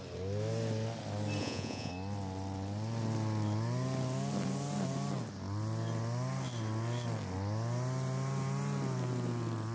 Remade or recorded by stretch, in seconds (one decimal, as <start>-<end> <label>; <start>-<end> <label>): 0.0-1.4 recorded; 1.4-1.9 remade; 1.9-9.7 recorded